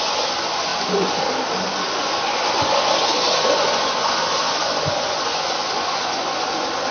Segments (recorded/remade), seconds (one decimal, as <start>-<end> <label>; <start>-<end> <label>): 0.0-0.7 remade; 0.7-1.7 recorded; 1.7-6.9 remade